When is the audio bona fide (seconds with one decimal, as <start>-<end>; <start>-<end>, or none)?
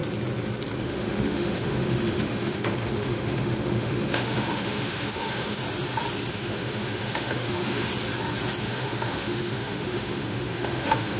0.0-0.8; 5.6-6.3; 7.9-8.6